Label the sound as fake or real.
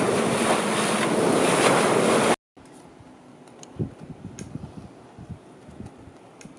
real